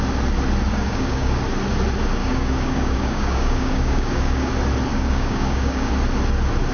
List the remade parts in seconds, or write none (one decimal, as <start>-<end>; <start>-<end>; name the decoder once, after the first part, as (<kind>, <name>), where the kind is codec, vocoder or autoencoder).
0.7-1.4 (codec, DAC); 2.2-4.5; 4.9-5.9